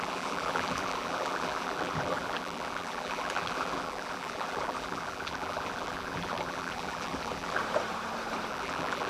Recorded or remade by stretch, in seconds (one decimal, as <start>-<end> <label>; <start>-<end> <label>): 0.0-7.6 remade; 7.6-8.5 recorded; 8.5-9.1 remade